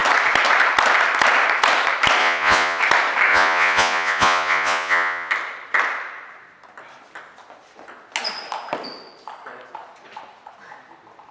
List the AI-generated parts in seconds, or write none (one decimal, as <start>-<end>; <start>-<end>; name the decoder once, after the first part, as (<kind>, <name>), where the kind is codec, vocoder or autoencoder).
2.2-2.8 (vocoder, Vocos); 3.3-5.3